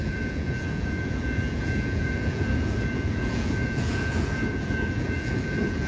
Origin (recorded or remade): remade